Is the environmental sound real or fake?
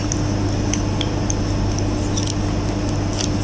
real